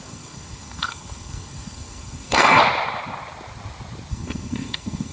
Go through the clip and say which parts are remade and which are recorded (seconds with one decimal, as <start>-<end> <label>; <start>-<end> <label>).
0.0-2.6 remade; 2.6-4.1 recorded; 4.1-5.1 remade